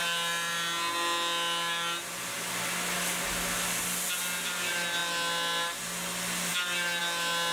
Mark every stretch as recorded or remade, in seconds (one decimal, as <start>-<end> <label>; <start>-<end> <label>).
0.0-7.5 recorded